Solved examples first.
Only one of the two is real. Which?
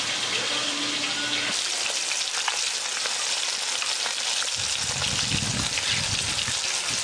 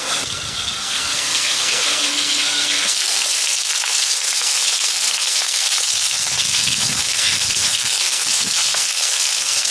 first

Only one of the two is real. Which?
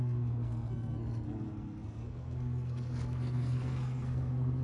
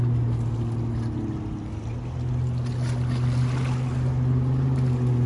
second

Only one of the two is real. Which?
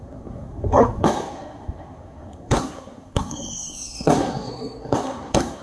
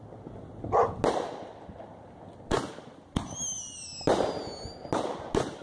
second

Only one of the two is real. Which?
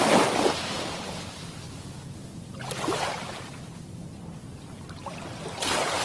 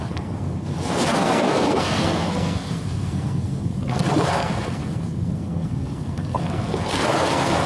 first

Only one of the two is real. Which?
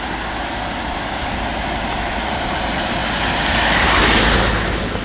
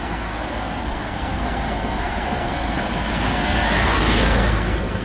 first